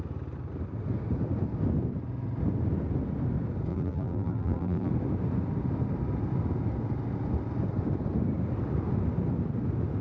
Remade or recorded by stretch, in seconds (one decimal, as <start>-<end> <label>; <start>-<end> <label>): 0.0-3.7 recorded; 3.7-4.9 remade; 4.9-10.0 recorded

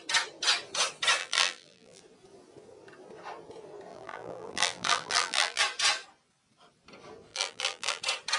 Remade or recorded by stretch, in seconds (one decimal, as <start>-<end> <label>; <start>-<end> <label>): 0.0-1.2 recorded; 1.2-2.0 remade; 2.0-3.9 recorded; 3.9-5.6 remade; 5.6-7.3 recorded; 7.3-8.0 remade; 8.0-8.4 recorded

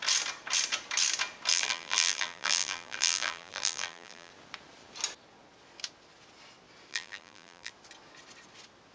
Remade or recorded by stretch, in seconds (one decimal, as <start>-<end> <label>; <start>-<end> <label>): 0.0-1.5 recorded; 1.5-4.3 remade; 4.3-6.9 recorded; 6.9-7.7 remade; 7.7-8.9 recorded

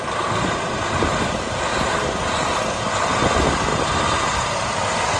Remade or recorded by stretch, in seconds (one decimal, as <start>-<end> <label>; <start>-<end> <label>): 0.0-1.7 recorded; 1.7-2.8 remade; 2.8-3.7 recorded; 3.7-4.5 remade; 4.5-5.2 recorded

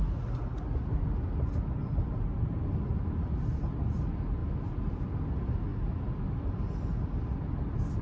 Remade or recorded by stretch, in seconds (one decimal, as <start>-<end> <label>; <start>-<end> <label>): 0.0-1.8 recorded; 1.8-3.6 remade; 3.6-5.7 recorded; 5.7-6.6 remade; 6.6-8.0 recorded

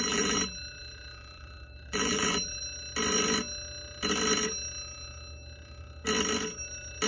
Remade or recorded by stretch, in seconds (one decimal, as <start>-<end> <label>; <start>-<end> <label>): 0.0-2.6 remade; 2.6-7.1 recorded

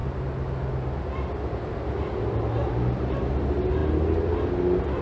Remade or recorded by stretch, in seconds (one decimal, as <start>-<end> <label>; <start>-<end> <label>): 0.0-5.0 recorded